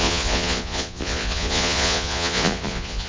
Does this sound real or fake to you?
fake